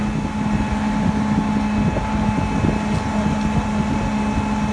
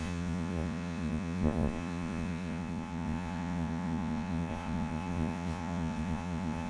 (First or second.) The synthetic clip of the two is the second